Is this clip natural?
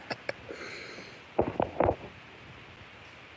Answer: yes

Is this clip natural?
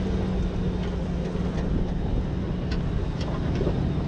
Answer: yes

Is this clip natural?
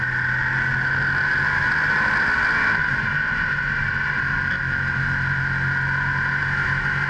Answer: yes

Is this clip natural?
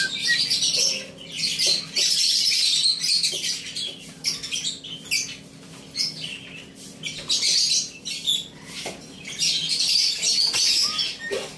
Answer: yes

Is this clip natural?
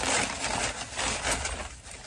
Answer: yes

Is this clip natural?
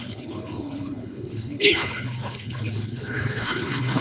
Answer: no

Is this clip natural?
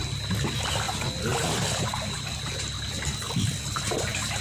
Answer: yes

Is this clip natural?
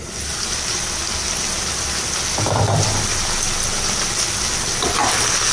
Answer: yes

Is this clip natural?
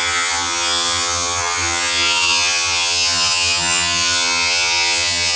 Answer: no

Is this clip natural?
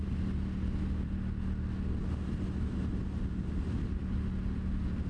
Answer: yes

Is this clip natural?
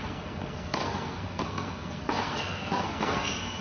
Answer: no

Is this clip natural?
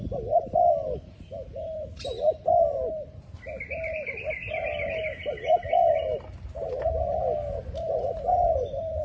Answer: yes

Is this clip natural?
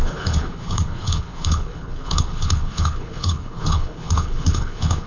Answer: no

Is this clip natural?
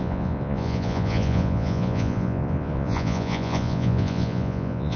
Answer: no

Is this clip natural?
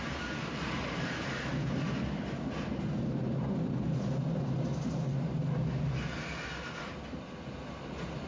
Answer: yes